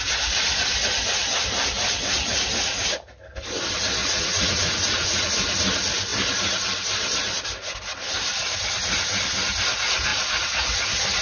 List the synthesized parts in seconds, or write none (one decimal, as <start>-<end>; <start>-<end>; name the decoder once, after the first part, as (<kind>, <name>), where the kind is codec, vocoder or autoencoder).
4.0-5.3 (vocoder, Vocos)